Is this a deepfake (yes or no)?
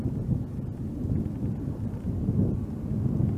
no